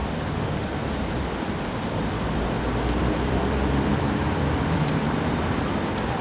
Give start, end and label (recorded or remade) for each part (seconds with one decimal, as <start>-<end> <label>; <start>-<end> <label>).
0.0-3.0 recorded; 3.0-6.2 remade